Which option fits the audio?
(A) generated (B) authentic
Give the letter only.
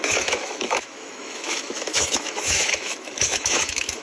A